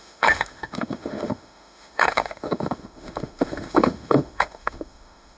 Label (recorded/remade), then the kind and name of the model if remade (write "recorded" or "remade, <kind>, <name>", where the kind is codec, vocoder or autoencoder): remade, autoencoder, DAC-VAE